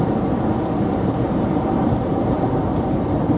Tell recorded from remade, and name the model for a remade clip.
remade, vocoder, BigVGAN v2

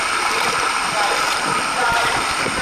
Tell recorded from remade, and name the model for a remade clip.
remade, vocoder, BigVGAN v2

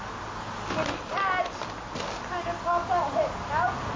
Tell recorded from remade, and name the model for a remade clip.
recorded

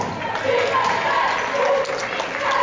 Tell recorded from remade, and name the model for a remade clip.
recorded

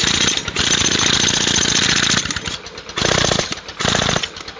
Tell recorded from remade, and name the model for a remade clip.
recorded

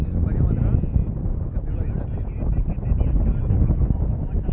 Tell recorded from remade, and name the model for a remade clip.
recorded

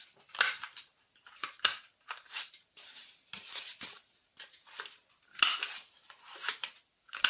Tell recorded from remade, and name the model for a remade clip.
remade, vocoder, BigVGAN v2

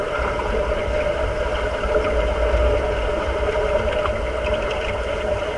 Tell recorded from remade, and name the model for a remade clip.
recorded